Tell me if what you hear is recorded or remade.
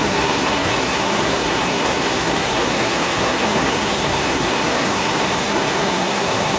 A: remade